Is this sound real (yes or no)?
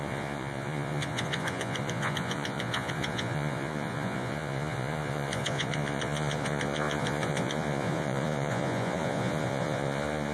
no